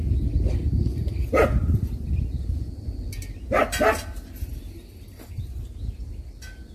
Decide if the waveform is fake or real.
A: real